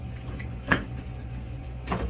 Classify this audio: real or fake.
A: fake